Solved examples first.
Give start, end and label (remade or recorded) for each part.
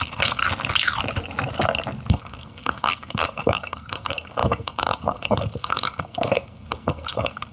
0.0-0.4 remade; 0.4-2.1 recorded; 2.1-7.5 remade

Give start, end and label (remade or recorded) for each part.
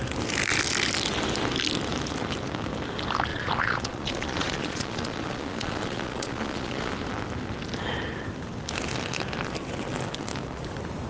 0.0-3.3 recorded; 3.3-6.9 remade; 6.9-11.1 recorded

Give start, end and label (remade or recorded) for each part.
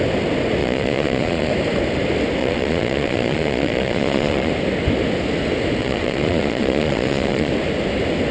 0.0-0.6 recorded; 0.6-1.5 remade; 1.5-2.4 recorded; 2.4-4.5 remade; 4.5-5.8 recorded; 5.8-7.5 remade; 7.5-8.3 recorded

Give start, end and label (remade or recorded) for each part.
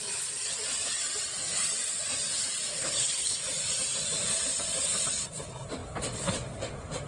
0.0-2.7 recorded; 2.7-3.4 remade; 3.4-7.1 recorded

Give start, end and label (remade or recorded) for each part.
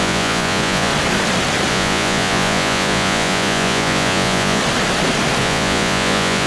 0.0-0.9 remade; 0.9-1.7 recorded; 1.7-4.6 remade; 4.6-5.4 recorded; 5.4-6.5 remade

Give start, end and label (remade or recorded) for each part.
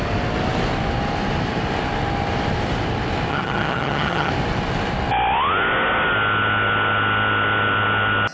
0.0-3.3 recorded; 3.3-4.3 remade; 4.3-8.3 recorded